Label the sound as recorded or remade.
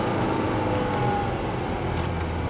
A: recorded